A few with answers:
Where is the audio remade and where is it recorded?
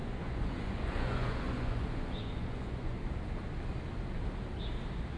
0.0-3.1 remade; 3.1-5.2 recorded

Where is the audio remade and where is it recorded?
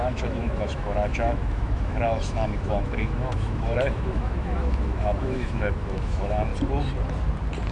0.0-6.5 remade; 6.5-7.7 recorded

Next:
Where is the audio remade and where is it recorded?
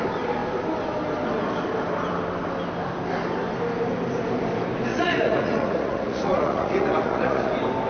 0.0-4.9 recorded; 4.9-7.5 remade; 7.5-7.9 recorded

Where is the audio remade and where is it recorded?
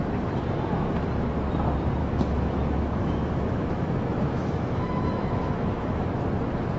0.0-2.0 recorded; 2.0-6.1 remade; 6.1-6.8 recorded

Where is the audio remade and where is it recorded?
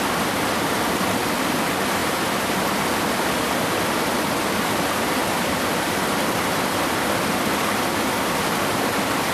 0.0-5.2 recorded; 5.2-8.4 remade; 8.4-9.3 recorded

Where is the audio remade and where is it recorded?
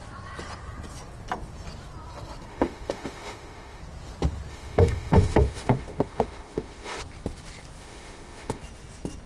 0.0-2.5 recorded; 2.5-3.8 remade; 3.8-4.5 recorded; 4.5-7.0 remade; 7.0-7.8 recorded; 7.8-8.6 remade; 8.6-9.3 recorded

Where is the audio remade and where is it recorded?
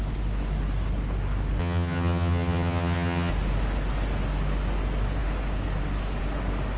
0.0-1.6 recorded; 1.6-3.3 remade; 3.3-6.8 recorded